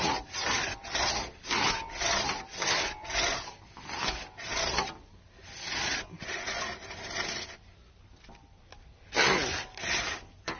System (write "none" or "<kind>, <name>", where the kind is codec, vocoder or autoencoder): none